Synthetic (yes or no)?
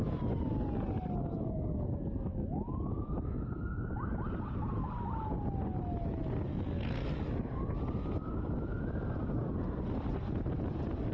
no